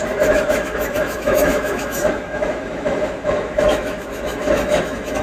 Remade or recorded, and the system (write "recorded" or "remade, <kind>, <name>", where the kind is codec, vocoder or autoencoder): remade, autoencoder, DAC-VAE